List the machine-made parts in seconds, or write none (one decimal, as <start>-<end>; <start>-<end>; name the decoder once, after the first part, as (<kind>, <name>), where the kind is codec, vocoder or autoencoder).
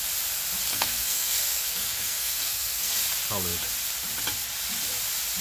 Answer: 0.7-3.0 (codec, SNAC)